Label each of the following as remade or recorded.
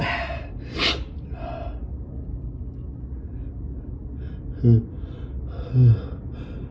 recorded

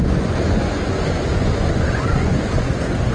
remade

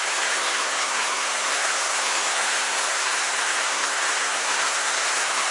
remade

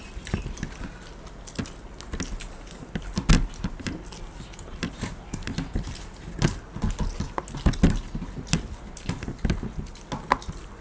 recorded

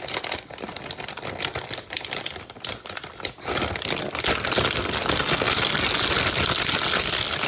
recorded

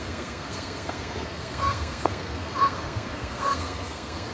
remade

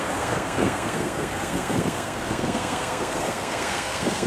remade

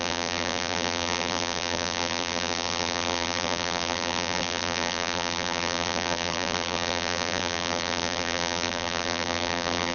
remade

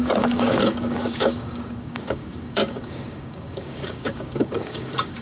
remade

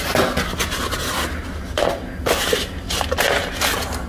recorded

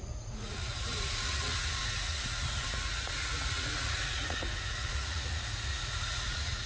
remade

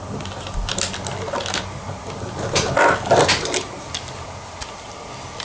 recorded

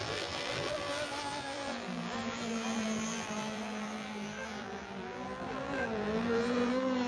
remade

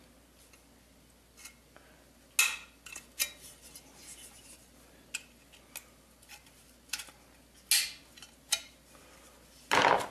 recorded